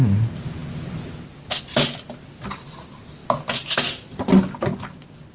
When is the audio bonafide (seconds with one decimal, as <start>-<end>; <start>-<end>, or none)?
0.0-5.3